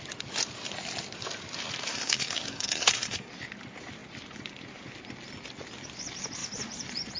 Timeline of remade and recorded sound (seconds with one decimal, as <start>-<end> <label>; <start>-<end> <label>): 0.0-1.9 recorded; 1.9-3.3 remade; 3.3-7.2 recorded